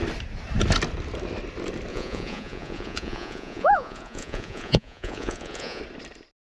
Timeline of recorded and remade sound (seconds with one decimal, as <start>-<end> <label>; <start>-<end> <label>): 0.0-1.9 recorded; 1.9-5.8 remade; 5.8-6.5 recorded

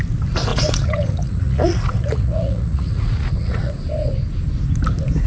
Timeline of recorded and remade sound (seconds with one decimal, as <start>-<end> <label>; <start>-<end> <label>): 0.0-0.5 recorded; 0.5-3.7 remade; 3.7-5.3 recorded

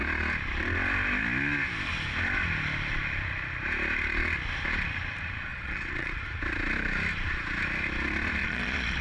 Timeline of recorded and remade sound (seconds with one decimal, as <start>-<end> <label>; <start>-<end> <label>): 0.0-5.5 recorded; 5.5-6.2 remade; 6.2-8.4 recorded; 8.4-9.0 remade

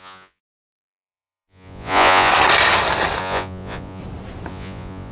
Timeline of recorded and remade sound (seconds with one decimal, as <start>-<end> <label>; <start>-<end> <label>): 0.0-2.3 remade; 2.3-3.2 recorded; 3.2-4.0 remade; 4.0-4.5 recorded; 4.5-5.1 remade

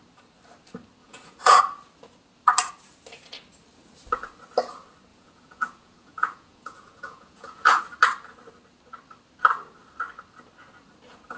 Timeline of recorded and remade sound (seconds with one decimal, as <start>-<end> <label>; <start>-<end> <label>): 0.0-1.0 recorded; 1.0-1.6 remade; 1.6-5.1 recorded; 5.1-7.8 remade; 7.8-11.4 recorded

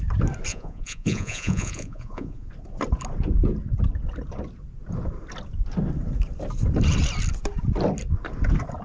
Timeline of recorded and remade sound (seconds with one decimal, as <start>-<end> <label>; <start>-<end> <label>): 0.0-0.5 recorded; 0.5-2.5 remade; 2.5-8.8 recorded

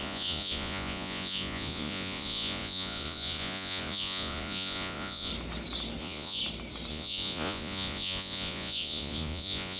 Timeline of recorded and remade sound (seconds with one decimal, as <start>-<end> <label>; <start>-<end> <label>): 0.0-5.3 remade; 5.3-6.0 recorded; 6.0-6.4 remade; 6.4-6.9 recorded; 6.9-9.8 remade